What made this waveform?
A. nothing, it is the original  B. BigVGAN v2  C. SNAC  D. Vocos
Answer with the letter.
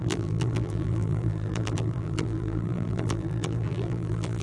B